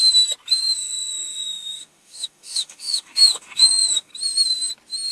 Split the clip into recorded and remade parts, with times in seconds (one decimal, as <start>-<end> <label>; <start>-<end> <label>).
0.0-0.6 recorded; 0.6-4.1 remade; 4.1-5.1 recorded